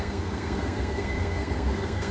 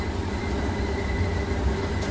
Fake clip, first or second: first